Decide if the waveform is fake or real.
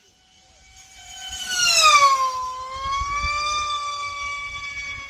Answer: real